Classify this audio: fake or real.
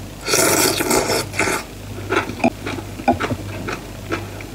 real